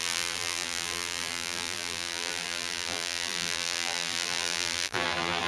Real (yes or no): no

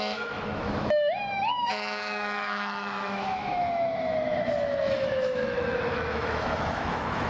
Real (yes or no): no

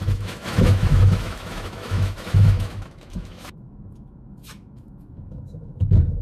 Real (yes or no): no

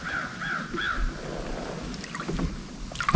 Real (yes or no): yes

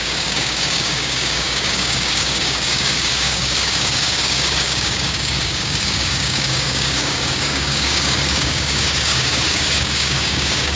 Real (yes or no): no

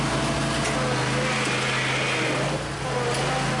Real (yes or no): yes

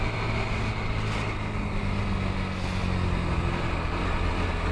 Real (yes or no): yes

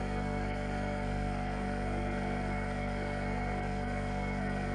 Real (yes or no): no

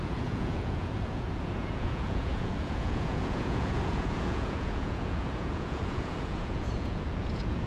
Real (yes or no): no